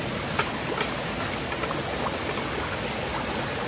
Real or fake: real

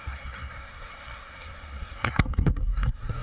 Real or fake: fake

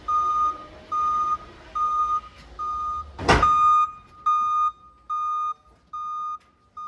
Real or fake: real